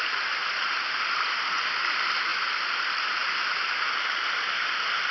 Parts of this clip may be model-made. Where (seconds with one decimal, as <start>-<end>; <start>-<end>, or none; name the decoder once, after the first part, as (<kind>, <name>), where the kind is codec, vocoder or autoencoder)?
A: 0.0-2.3 (vocoder, BigVGAN v2); 2.8-5.1